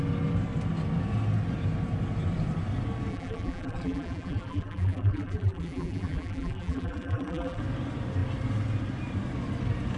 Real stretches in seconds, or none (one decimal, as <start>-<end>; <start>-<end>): 0.0-3.1; 7.6-10.0